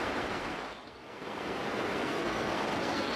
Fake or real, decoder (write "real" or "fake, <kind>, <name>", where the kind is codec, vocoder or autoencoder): fake, codec, SNAC